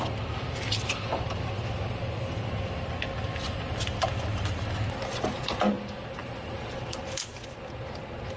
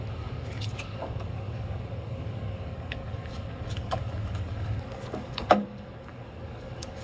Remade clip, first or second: second